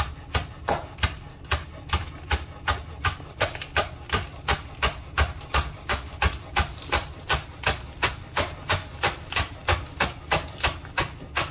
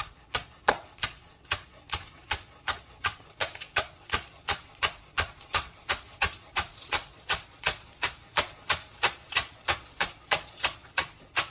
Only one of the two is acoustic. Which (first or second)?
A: first